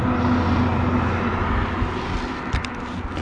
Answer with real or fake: real